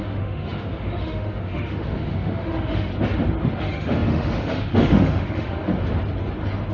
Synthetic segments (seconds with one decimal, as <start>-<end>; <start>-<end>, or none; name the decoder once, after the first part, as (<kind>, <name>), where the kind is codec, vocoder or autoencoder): 0.0-2.9 (autoencoder, DAC-VAE); 3.6-5.7